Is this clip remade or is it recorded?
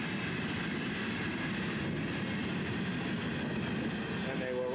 recorded